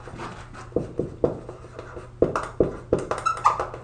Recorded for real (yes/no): yes